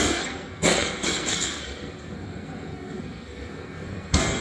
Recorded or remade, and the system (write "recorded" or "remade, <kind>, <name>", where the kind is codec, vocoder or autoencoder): remade, codec, SNAC